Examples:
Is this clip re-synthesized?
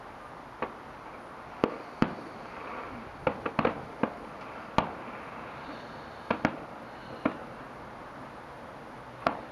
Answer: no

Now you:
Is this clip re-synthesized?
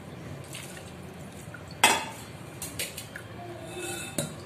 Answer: no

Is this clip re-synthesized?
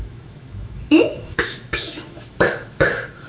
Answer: yes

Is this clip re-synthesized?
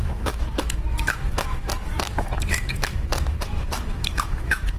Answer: yes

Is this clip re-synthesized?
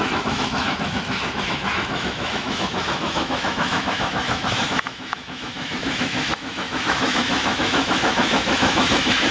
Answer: yes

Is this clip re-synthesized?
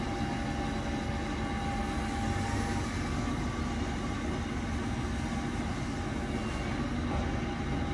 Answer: no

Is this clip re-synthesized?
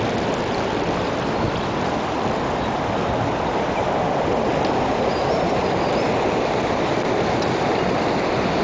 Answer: no